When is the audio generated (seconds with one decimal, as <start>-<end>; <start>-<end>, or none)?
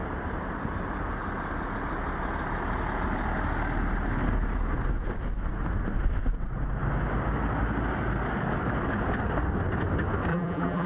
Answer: 10.3-10.9